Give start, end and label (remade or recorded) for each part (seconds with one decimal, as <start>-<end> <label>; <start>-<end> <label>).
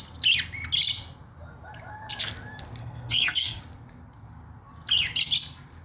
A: 0.0-2.8 recorded; 2.8-3.6 remade; 3.6-5.8 recorded